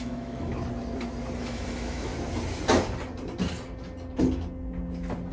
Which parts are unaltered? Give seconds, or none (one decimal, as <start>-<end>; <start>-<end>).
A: 0.5-1.4; 2.1-5.3

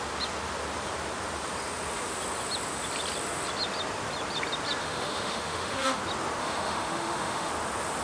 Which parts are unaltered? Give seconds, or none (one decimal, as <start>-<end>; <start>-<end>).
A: 0.0-4.8; 6.0-6.4; 7.5-8.0

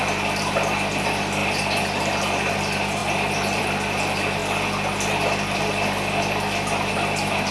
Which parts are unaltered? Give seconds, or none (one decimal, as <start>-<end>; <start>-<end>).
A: 0.0-7.5